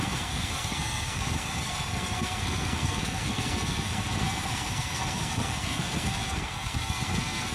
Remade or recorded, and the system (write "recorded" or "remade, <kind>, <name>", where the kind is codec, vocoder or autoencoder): remade, codec, SNAC